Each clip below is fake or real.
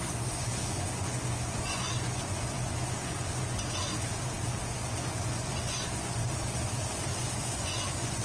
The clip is fake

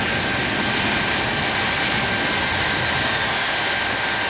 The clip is real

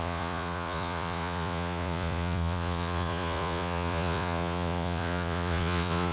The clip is fake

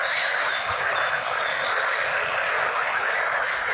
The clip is real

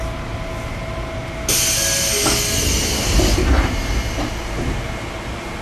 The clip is real